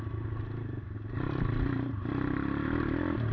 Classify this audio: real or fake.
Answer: real